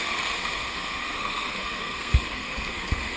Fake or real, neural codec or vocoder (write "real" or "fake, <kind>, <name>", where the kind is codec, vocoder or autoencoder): fake, codec, SNAC